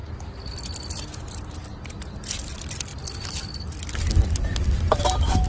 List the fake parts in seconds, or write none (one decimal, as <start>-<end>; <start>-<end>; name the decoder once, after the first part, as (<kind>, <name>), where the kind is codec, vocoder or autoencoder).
none